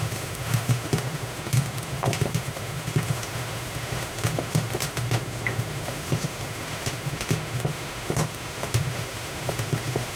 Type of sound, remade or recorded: remade